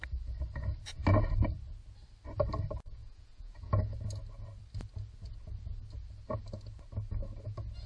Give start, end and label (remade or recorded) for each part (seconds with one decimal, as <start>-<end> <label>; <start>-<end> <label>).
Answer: 0.0-3.0 recorded; 3.0-3.7 remade; 3.7-7.9 recorded